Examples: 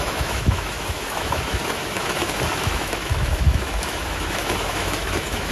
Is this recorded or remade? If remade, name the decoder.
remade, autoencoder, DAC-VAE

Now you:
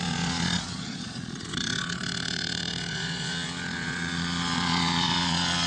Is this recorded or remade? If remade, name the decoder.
remade, vocoder, Vocos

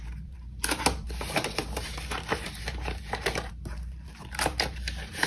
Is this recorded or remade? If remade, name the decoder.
remade, vocoder, BigVGAN v2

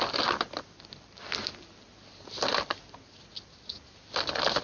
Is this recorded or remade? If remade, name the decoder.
recorded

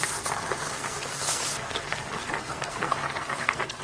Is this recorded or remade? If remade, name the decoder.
remade, codec, SNAC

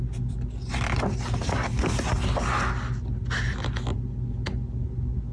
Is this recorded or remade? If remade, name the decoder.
recorded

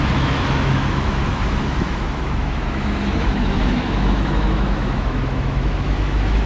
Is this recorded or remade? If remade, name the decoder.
remade, autoencoder, DAC-VAE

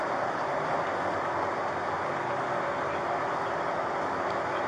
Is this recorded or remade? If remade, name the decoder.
recorded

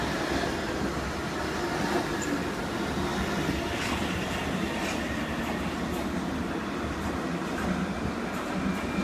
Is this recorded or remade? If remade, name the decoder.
recorded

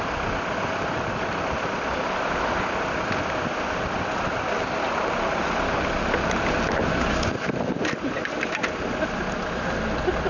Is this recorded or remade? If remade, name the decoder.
recorded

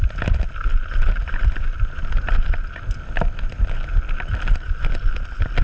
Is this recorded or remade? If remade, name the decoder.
recorded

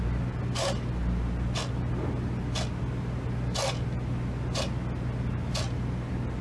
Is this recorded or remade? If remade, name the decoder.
recorded